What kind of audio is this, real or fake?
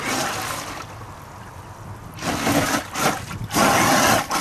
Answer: real